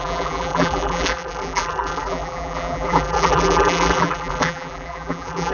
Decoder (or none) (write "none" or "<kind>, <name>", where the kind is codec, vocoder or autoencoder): vocoder, BigVGAN v2